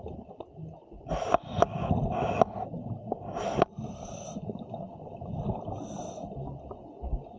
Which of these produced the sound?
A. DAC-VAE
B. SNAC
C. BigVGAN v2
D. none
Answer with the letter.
D